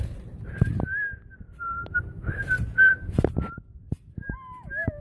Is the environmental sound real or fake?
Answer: real